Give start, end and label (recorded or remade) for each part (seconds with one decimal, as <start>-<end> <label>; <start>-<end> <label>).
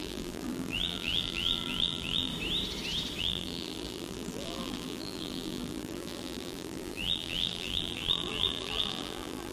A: 0.0-2.3 remade; 2.3-3.2 recorded; 3.2-9.5 remade